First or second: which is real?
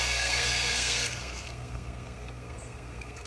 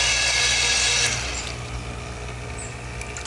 second